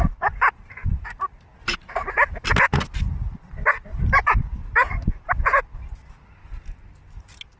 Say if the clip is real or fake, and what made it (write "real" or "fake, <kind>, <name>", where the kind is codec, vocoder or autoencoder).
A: real